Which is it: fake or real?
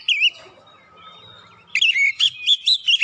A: real